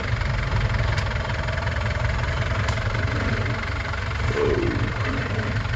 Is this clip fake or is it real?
fake